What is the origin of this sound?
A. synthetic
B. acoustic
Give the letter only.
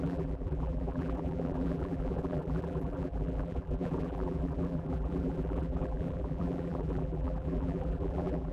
A